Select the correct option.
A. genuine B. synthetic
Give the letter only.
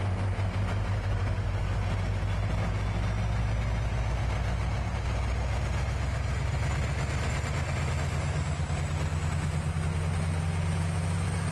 A